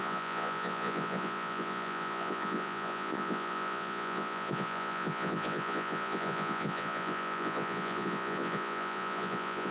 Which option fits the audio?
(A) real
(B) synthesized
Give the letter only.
B